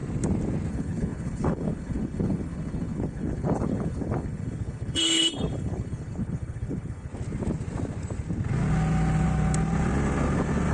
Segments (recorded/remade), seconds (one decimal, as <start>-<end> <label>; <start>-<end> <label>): 0.0-0.7 recorded; 0.7-7.1 remade; 7.1-10.7 recorded